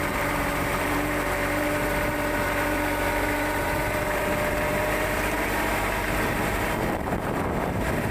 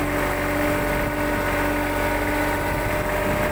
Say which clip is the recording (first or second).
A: second